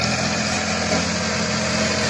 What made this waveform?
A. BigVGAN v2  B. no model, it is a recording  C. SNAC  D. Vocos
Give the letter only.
B